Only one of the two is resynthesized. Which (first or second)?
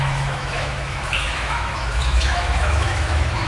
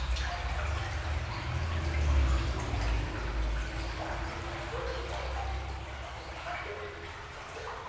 first